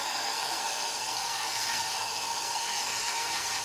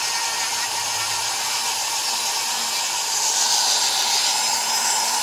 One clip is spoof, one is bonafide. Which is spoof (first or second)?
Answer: first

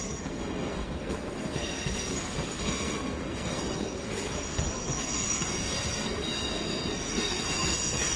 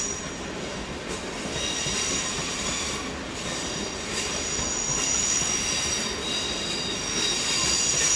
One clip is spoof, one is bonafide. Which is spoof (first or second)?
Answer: first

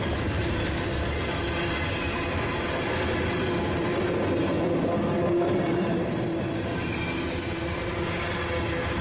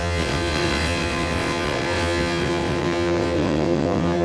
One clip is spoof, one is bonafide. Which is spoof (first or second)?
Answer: second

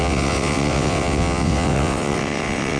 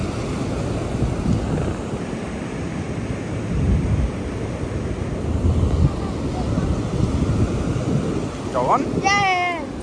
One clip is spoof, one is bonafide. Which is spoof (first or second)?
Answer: first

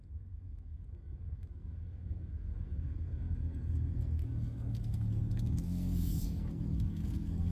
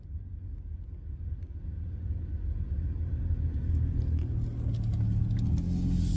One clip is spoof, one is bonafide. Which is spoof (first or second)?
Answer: first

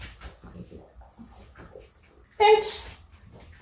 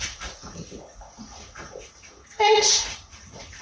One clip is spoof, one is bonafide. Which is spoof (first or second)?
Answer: second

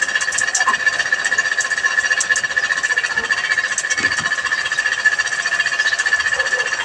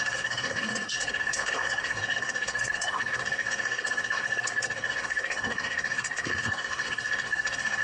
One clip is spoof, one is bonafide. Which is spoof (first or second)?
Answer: second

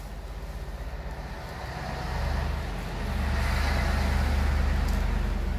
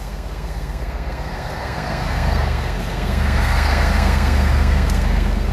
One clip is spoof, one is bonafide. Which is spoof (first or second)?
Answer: second